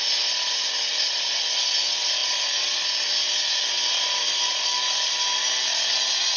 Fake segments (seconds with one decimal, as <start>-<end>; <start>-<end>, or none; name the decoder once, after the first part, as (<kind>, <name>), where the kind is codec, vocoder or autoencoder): none